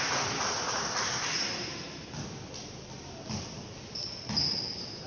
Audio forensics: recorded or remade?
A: recorded